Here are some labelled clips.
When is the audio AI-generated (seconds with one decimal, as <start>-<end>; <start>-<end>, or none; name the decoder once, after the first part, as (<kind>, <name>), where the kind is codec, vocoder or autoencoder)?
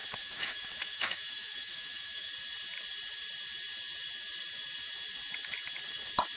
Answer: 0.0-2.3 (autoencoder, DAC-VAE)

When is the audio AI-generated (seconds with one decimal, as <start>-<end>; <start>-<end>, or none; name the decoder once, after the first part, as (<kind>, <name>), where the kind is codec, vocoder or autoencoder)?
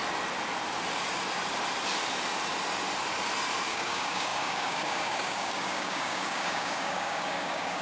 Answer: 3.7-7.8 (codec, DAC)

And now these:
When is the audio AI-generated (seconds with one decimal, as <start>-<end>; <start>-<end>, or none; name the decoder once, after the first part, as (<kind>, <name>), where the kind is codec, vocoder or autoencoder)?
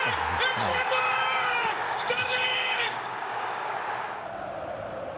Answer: 0.7-3.8 (codec, DAC)